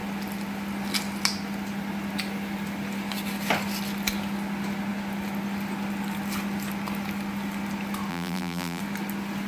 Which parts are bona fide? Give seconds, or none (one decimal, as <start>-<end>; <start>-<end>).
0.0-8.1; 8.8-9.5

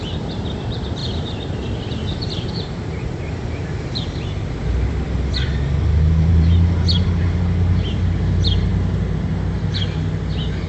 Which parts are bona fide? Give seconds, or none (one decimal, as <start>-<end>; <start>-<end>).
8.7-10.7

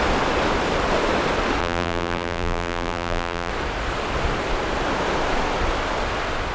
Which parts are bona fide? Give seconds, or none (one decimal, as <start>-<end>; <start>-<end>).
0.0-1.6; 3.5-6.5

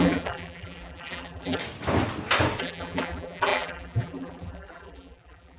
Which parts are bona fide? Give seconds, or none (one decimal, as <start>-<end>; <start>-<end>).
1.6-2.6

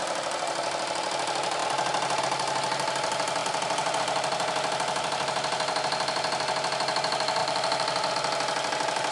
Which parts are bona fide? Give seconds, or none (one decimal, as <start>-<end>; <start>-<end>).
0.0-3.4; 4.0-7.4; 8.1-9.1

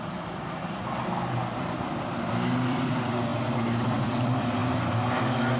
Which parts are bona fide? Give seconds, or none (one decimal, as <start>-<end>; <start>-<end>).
0.8-1.9; 4.6-5.6

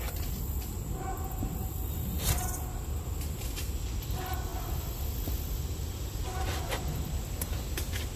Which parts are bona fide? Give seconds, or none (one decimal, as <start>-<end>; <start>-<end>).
0.0-8.2